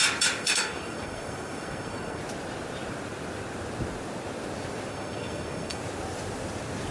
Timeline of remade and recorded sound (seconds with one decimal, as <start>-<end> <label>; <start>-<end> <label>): 0.0-0.4 recorded; 0.4-2.2 remade; 2.2-4.9 recorded; 4.9-5.8 remade; 5.8-6.9 recorded